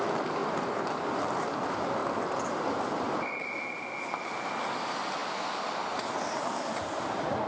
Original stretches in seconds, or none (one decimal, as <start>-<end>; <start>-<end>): 0.0-7.5